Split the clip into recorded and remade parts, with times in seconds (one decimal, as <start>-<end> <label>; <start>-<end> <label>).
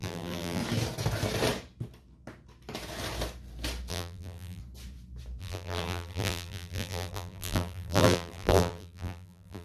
0.0-0.6 remade; 0.6-3.9 recorded; 3.9-4.6 remade; 4.6-5.4 recorded; 5.4-9.6 remade